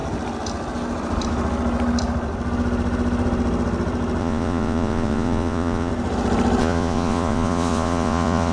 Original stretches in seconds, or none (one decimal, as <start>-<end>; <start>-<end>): 0.0-4.2; 5.9-6.6